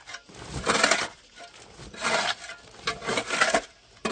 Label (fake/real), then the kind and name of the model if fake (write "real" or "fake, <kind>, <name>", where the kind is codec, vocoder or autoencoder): real